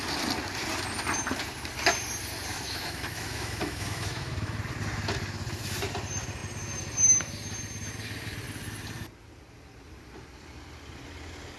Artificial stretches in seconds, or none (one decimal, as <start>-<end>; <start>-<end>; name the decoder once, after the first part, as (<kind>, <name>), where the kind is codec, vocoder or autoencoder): 2.5-4.6 (autoencoder, DAC-VAE)